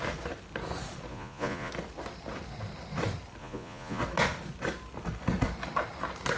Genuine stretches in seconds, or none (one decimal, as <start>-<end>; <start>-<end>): 0.0-1.1; 1.7-3.4; 4.0-6.4